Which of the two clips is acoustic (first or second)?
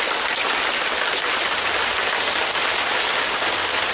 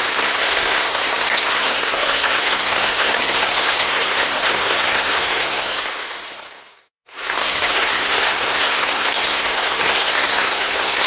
first